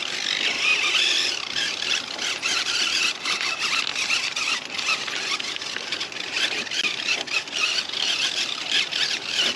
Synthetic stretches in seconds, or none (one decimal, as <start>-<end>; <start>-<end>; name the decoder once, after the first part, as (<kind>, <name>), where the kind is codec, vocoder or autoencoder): none